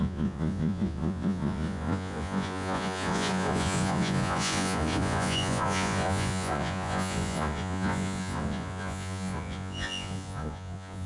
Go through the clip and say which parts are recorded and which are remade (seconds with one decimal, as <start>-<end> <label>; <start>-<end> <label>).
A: 0.0-11.1 remade